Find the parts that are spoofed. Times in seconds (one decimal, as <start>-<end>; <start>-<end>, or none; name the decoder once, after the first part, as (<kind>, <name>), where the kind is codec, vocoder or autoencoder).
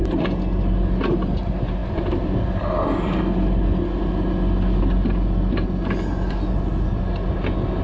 1.8-3.2 (vocoder, BigVGAN v2)